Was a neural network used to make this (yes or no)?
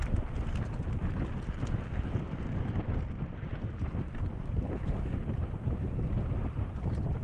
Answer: no